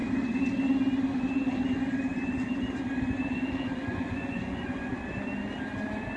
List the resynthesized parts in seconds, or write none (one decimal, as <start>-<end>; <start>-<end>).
3.9-4.9